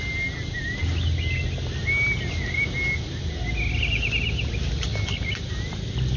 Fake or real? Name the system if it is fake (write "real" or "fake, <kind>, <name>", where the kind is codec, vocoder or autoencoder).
real